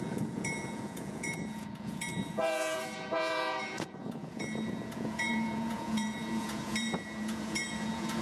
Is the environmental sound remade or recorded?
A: remade